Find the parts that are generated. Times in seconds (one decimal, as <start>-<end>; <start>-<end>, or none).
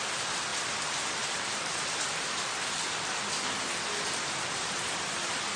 none